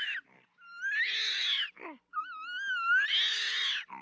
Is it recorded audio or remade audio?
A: recorded